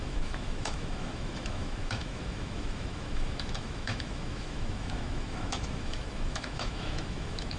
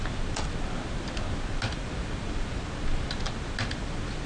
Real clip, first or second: second